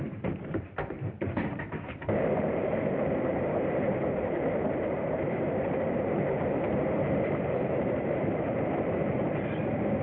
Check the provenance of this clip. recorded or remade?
remade